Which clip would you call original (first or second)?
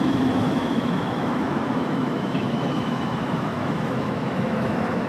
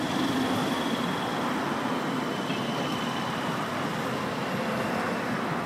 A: second